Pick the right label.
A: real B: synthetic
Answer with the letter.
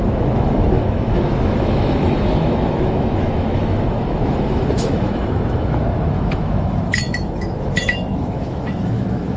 B